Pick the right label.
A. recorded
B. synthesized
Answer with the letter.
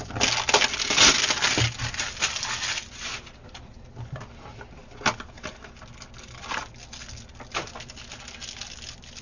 A